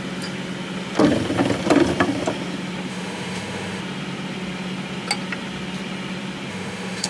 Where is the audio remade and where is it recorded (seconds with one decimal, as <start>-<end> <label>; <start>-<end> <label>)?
0.0-2.9 recorded; 2.9-3.8 remade; 3.8-6.5 recorded; 6.5-7.1 remade